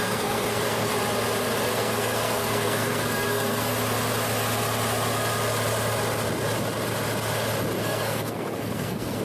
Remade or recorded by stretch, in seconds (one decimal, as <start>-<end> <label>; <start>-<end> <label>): 0.0-0.9 remade; 0.9-1.7 recorded; 1.7-3.7 remade; 3.7-7.8 recorded; 7.8-9.2 remade